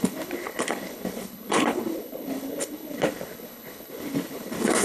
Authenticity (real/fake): fake